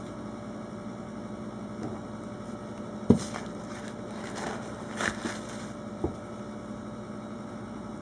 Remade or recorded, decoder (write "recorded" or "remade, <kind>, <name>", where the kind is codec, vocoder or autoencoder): recorded